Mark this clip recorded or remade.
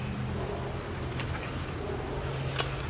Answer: recorded